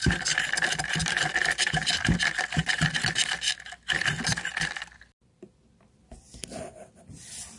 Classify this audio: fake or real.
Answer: fake